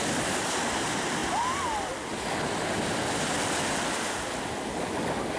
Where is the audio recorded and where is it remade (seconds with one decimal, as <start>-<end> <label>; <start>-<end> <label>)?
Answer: 0.0-5.4 recorded